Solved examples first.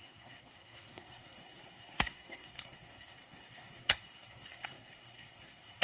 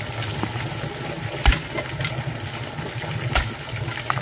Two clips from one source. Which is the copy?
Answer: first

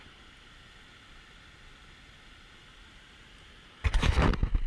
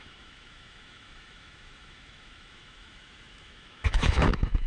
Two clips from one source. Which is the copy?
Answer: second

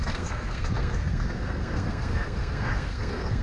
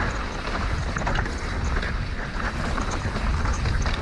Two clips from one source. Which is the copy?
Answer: first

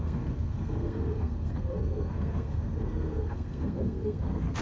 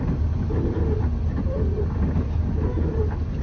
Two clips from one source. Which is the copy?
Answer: first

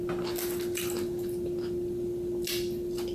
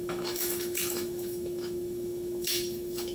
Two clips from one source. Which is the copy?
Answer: second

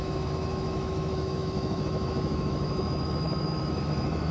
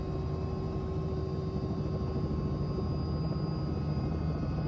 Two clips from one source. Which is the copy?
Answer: first